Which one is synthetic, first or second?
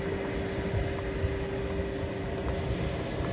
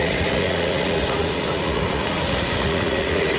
second